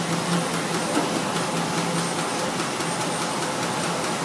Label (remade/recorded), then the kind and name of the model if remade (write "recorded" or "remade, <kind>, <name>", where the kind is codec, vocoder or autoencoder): recorded